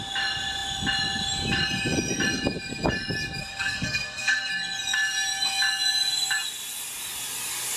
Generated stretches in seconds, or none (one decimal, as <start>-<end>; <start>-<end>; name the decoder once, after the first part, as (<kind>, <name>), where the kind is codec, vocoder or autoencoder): 3.4-4.5 (codec, SNAC)